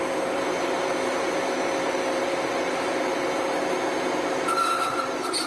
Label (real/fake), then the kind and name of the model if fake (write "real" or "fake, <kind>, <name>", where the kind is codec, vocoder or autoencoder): fake, vocoder, BigVGAN v2